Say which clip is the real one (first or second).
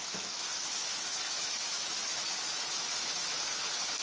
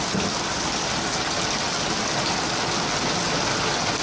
second